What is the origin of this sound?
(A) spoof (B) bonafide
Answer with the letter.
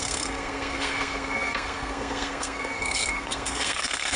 A